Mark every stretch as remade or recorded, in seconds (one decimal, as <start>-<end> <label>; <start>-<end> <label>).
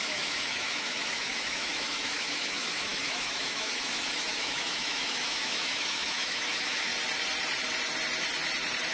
0.0-6.9 remade; 6.9-8.9 recorded